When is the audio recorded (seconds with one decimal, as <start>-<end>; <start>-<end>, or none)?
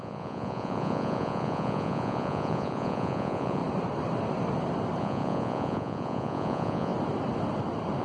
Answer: 3.6-5.0; 6.9-8.0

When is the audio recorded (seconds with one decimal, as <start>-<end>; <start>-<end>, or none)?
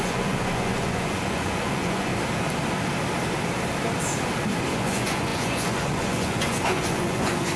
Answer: 2.1-4.7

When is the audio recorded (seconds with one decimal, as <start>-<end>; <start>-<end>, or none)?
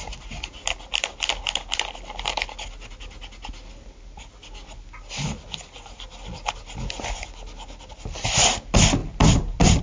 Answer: 0.0-9.8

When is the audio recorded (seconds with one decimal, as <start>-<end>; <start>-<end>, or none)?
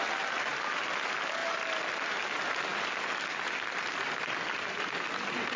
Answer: 0.0-5.6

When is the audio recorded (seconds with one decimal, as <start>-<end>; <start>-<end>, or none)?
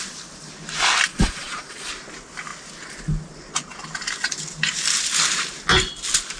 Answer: 0.0-1.1; 1.9-6.4